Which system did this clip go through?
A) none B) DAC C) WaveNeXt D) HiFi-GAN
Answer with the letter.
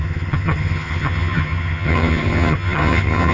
D